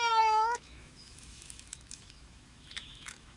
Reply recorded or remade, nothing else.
remade